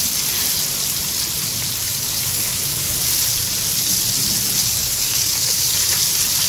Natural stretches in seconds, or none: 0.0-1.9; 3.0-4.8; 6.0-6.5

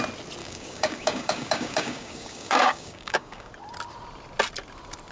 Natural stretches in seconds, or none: 0.0-0.4; 3.5-5.1

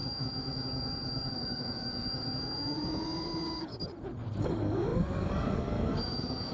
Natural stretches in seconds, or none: 3.7-4.4

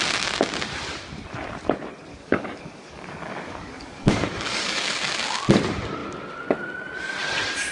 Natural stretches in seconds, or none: 0.0-2.1; 4.9-7.7

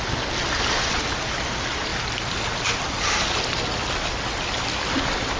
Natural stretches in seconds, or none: 0.0-5.4

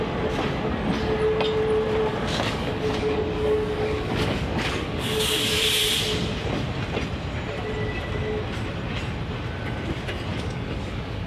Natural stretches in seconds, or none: 0.0-2.1; 5.6-10.3

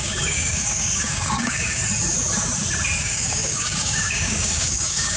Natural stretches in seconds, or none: 1.8-3.0

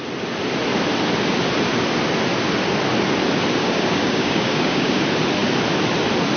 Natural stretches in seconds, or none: 0.0-3.6; 5.0-6.4